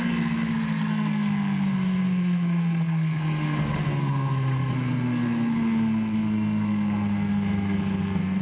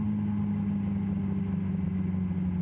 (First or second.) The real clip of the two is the second